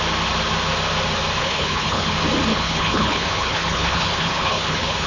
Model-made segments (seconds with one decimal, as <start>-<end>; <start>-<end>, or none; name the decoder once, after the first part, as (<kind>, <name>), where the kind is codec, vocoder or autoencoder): 1.4-2.1 (codec, HILCodec); 2.5-5.1